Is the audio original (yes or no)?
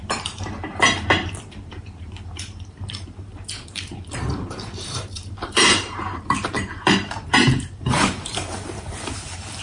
no